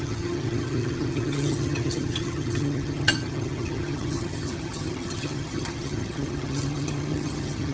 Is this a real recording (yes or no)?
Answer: no